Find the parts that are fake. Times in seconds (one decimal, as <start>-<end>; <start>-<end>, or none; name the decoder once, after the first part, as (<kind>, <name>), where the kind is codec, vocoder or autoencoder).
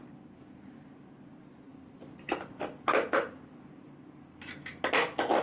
none